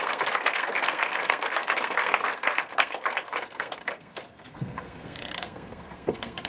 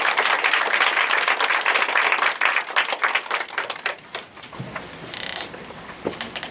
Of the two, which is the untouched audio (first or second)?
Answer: second